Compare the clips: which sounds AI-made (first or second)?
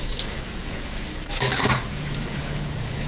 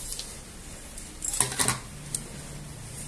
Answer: first